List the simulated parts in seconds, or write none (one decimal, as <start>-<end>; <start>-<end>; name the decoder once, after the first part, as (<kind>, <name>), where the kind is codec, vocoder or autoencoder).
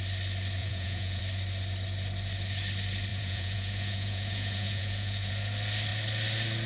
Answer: 0.6-1.2 (vocoder, Vocos); 3.1-5.3